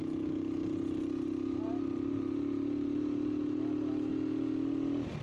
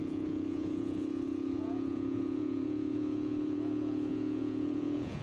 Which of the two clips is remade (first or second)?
second